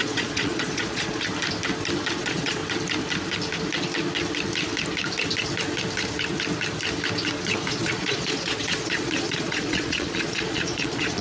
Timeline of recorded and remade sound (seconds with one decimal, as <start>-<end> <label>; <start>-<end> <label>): 0.0-1.3 remade; 1.3-2.2 recorded; 2.2-2.6 remade; 2.6-7.7 recorded; 7.7-11.2 remade